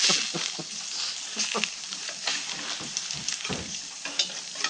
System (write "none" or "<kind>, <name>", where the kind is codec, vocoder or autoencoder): none